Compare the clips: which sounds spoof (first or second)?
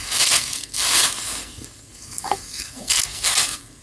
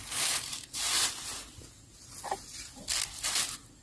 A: first